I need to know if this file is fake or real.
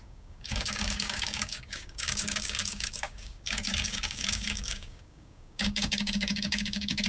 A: fake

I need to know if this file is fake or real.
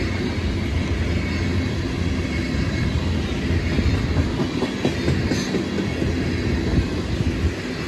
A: real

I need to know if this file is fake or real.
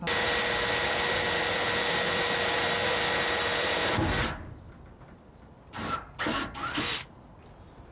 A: real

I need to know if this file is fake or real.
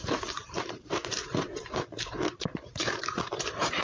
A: fake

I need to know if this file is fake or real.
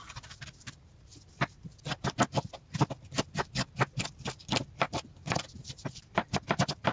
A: fake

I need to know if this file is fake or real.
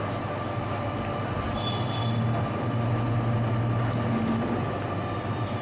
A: real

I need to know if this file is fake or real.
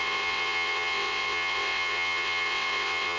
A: fake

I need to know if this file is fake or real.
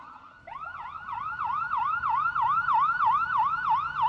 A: real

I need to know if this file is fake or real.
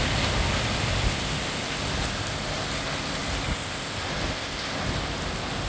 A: real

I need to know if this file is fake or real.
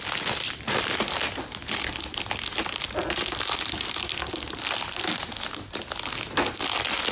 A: real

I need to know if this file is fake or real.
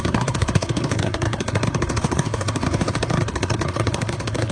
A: fake